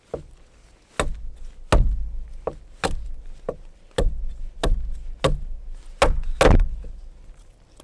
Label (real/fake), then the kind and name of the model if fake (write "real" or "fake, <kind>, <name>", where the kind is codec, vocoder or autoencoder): real